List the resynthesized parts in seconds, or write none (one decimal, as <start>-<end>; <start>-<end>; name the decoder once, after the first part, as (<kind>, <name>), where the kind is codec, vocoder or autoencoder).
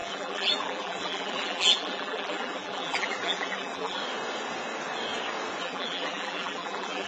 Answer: 0.0-4.0 (vocoder, BigVGAN v2); 5.6-7.1